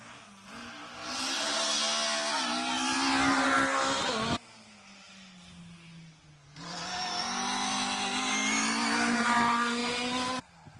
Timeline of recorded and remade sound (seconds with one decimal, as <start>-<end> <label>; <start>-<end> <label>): 0.0-10.8 recorded